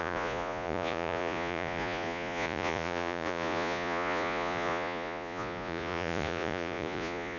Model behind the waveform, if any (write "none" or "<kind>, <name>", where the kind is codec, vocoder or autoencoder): vocoder, Vocos